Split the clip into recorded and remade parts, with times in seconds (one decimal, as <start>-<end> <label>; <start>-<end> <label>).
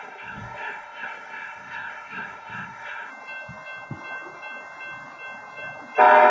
0.0-3.1 remade; 3.1-6.3 recorded